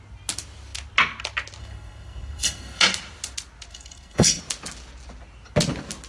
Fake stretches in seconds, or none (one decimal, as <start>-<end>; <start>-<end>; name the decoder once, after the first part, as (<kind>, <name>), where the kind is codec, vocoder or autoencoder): 1.6-2.8 (codec, SNAC); 3.7-4.4